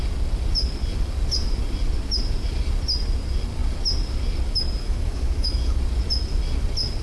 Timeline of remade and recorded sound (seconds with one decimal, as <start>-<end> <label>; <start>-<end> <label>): 0.0-4.8 recorded; 4.8-5.8 remade; 5.8-7.0 recorded